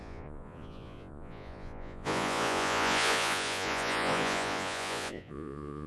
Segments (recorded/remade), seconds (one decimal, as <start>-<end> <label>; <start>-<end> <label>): 0.0-5.9 remade